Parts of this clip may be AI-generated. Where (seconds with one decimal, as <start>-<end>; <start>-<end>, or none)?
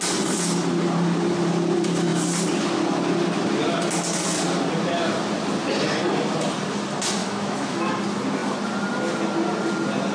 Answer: 7.2-7.9